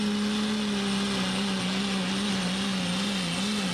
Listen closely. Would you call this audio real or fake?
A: real